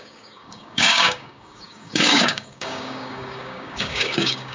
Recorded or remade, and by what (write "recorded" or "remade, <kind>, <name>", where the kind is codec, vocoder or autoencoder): remade, codec, DAC